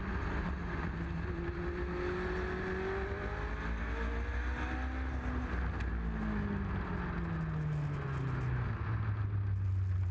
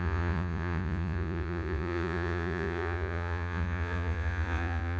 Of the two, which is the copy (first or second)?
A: second